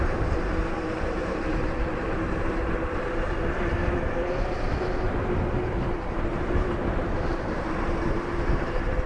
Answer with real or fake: fake